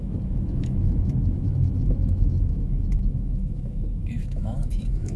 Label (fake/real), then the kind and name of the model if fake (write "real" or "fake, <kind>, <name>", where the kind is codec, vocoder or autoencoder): fake, autoencoder, DAC-VAE